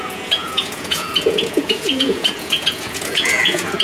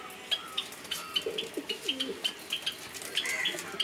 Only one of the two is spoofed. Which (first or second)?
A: first